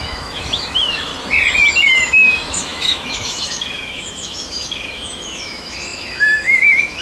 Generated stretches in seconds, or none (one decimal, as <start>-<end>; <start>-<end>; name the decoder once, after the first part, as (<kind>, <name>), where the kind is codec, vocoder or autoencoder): 0.0-1.1 (autoencoder, DAC-VAE); 1.9-7.0

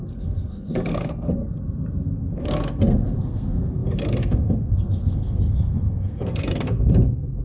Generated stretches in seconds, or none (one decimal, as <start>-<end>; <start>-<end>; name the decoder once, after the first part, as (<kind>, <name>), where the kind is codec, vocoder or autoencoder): 0.0-1.4 (codec, SNAC); 2.4-7.4

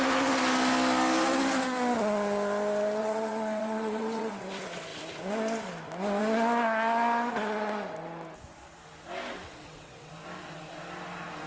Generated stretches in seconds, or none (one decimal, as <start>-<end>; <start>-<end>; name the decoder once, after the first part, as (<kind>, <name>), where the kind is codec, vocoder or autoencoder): 3.0-4.3 (vocoder, WaveNeXt); 9.3-10.1

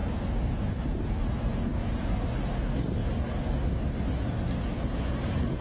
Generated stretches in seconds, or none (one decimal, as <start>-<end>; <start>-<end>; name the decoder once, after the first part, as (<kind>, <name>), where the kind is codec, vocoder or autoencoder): none

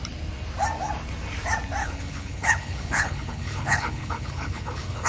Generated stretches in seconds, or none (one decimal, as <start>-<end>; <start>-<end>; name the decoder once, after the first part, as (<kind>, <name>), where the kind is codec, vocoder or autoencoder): 1.8-5.1 (codec, HILCodec)

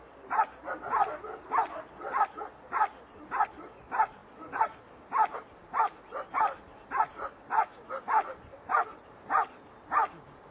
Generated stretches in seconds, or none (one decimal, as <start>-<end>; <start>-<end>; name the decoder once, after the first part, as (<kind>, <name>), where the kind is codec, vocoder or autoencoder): none